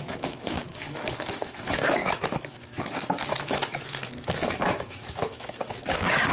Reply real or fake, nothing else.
fake